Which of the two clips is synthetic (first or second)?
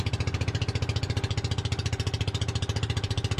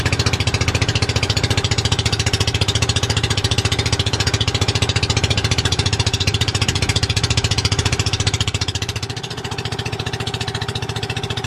second